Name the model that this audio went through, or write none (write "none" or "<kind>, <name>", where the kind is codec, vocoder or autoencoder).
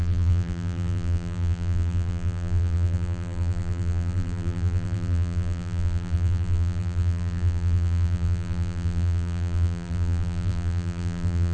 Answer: vocoder, BigVGAN v2